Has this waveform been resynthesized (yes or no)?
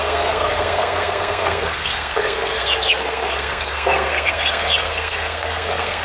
yes